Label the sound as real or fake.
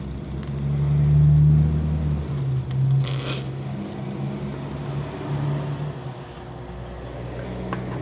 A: real